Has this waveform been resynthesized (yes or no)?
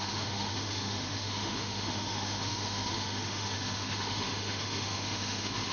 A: yes